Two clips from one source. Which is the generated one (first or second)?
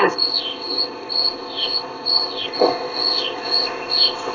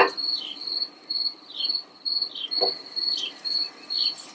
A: first